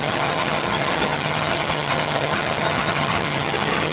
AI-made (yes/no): yes